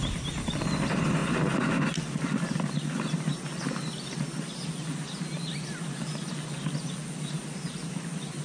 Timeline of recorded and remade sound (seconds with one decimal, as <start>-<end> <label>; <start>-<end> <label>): 0.0-8.4 recorded

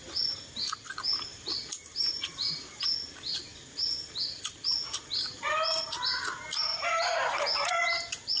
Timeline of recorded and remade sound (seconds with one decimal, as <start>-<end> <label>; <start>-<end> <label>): 0.0-1.3 recorded; 1.3-2.8 remade; 2.8-6.7 recorded; 6.7-7.7 remade; 7.7-8.4 recorded